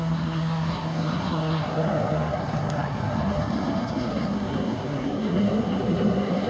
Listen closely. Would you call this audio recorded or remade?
remade